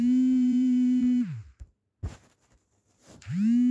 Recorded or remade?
remade